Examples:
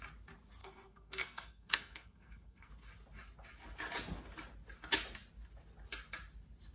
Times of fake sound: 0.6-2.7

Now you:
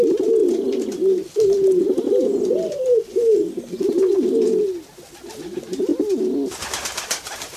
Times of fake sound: none

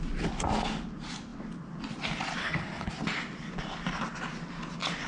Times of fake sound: 2.4-2.9

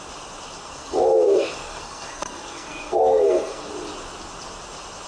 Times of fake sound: 0.6-3.7

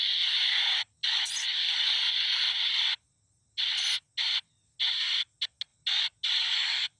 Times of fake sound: none

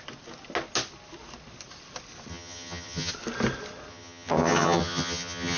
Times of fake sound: 2.3-3.1; 3.9-5.6

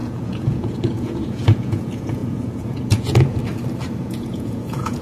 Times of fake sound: 0.0-3.4; 4.0-5.0

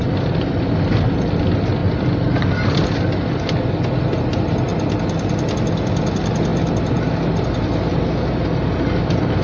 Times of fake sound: none